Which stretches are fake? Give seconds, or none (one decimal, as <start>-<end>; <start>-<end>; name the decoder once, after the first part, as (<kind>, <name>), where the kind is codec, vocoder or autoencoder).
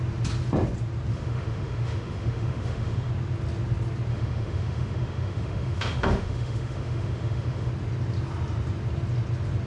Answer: 1.1-3.1 (autoencoder, DAC-VAE); 4.1-7.7